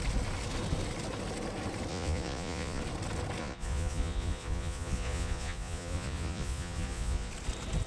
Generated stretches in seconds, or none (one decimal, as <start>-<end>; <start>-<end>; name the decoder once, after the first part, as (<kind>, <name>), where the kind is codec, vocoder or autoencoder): 1.9-2.8 (vocoder, Vocos); 3.4-7.3